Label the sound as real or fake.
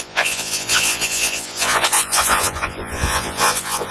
fake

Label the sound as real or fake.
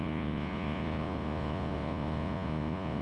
fake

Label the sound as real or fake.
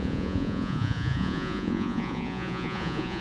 fake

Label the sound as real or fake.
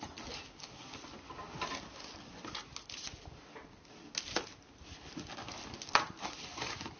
real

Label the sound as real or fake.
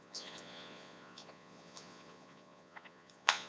fake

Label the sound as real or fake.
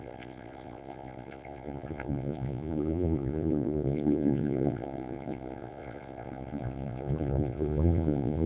fake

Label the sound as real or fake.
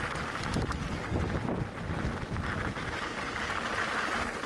real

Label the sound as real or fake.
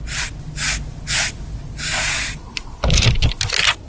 real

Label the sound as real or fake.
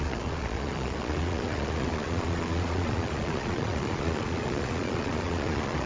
fake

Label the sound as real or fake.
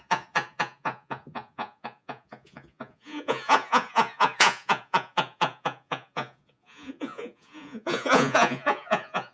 fake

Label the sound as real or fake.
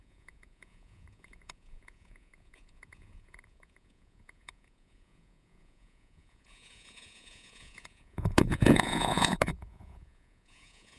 fake